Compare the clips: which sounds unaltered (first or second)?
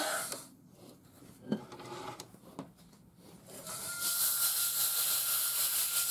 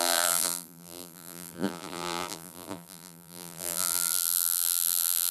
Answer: first